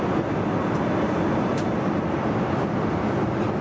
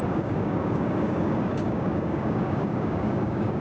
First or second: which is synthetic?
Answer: second